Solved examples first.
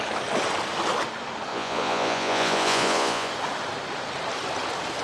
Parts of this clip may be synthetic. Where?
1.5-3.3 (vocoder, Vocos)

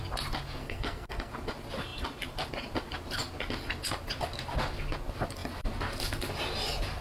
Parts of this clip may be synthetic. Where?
0.6-1.3 (codec, SNAC)

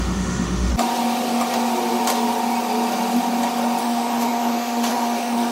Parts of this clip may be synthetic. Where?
0.0-0.7 (autoencoder, DAC-VAE); 3.8-5.5

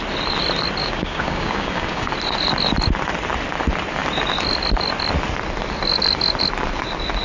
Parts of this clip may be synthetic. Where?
0.8-2.1 (codec, DAC)

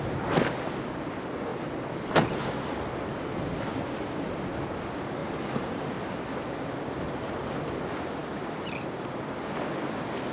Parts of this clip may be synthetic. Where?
5.2-6.2 (vocoder, BigVGAN v2)